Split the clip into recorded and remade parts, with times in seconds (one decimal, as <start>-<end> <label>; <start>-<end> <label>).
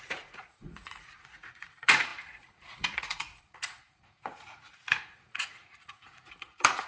0.0-6.9 remade